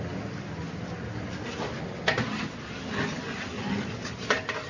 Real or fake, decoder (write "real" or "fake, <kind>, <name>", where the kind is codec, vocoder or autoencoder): real